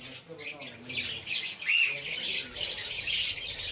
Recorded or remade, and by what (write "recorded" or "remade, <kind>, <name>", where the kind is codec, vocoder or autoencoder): recorded